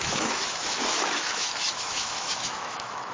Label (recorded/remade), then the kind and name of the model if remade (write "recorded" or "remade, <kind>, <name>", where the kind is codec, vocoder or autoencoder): remade, autoencoder, DAC-VAE